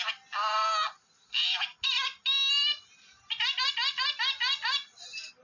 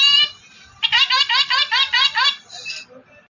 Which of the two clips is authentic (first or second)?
first